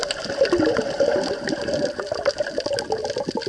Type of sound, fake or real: real